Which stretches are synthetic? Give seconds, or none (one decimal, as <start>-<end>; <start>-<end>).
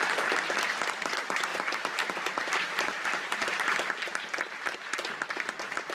1.5-3.9